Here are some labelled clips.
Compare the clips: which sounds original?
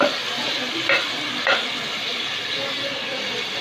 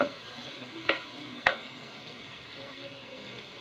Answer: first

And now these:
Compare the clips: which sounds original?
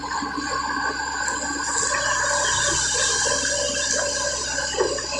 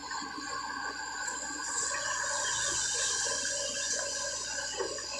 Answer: first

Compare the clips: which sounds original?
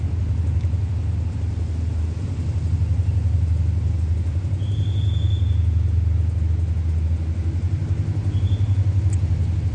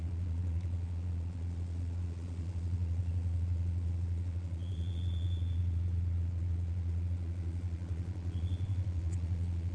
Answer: first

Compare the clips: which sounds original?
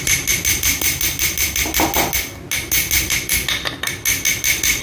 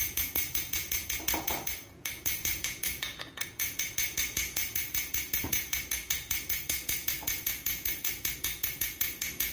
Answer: first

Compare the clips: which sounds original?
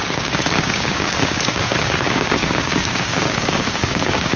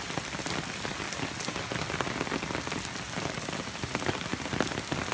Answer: second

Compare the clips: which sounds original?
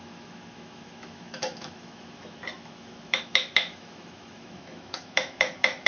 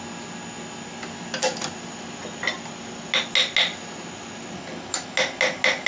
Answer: second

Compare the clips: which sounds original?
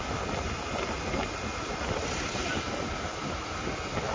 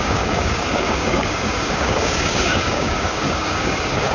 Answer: first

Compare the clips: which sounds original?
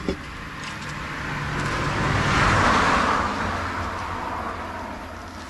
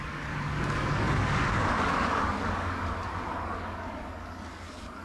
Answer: first